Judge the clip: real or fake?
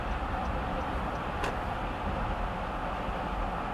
real